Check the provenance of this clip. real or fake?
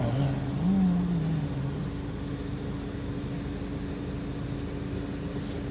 real